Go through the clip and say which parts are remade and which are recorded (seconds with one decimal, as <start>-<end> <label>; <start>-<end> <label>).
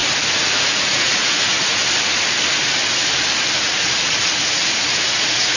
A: 0.0-0.6 recorded; 0.6-1.8 remade; 1.8-3.6 recorded; 3.6-5.6 remade